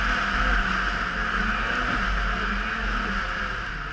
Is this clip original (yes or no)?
yes